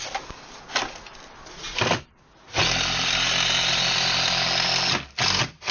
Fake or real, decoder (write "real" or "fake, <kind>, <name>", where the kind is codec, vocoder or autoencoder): real